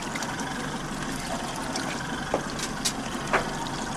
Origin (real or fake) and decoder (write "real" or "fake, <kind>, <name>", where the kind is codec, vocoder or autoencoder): real